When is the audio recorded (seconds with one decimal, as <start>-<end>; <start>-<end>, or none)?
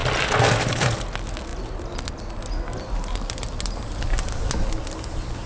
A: 0.0-5.5